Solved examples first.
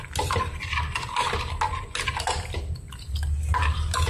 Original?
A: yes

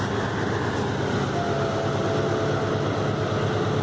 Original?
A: yes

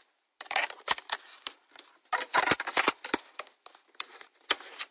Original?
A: no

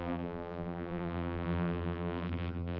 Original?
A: no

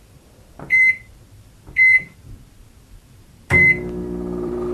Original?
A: no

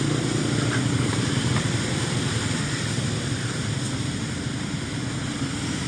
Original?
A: no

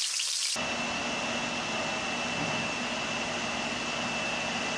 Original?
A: yes